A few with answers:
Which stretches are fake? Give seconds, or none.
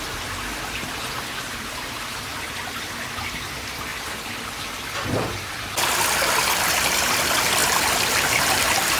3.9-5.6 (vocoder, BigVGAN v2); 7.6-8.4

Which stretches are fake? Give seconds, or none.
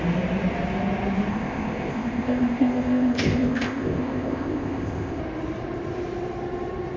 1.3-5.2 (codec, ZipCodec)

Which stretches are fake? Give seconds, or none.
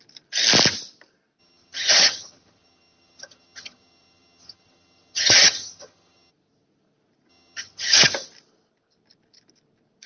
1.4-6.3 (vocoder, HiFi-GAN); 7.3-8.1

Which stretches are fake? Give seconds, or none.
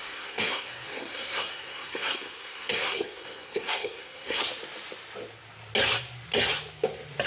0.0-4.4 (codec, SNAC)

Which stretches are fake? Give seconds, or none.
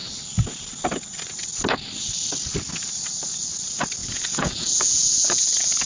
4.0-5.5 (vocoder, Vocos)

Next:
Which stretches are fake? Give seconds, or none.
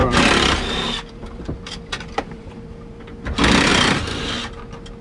0.0-3.0 (vocoder, BigVGAN v2); 3.7-4.2